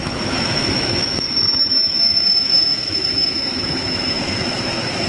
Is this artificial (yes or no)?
yes